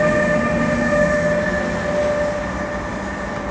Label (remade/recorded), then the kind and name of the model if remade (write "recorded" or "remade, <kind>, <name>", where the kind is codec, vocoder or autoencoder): recorded